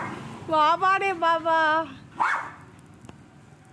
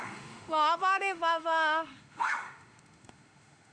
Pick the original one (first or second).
first